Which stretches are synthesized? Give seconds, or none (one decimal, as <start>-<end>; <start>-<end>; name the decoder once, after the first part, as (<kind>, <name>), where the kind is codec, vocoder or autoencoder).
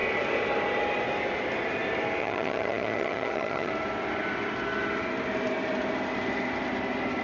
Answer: 2.2-3.7 (vocoder, HiFi-GAN)